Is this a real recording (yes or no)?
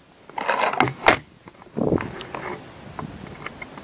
yes